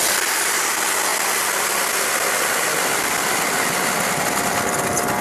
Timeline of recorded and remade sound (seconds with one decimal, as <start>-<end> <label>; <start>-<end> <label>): 0.0-5.2 recorded